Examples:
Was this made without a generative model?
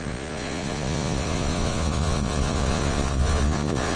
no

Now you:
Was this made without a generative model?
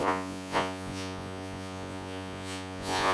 no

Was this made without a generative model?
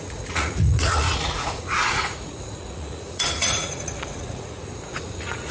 no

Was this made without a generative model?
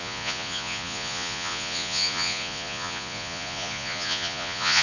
no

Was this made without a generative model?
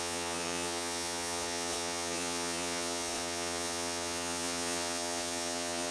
no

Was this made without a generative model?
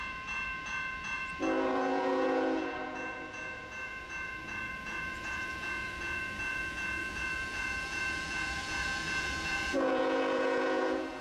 no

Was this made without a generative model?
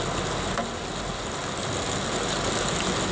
yes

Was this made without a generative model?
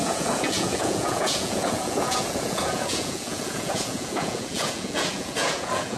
no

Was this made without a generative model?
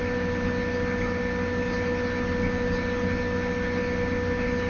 yes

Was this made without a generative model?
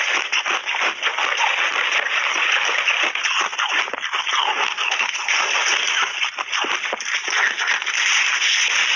yes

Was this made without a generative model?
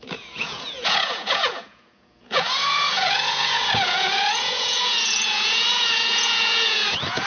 no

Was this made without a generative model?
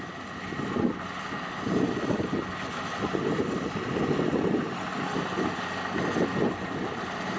yes